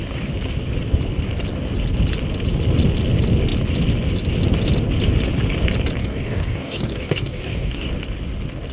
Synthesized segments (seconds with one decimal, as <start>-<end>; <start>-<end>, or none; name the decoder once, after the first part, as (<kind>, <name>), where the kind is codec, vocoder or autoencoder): 6.0-7.9 (codec, DAC)